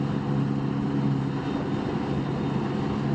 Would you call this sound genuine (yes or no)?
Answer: yes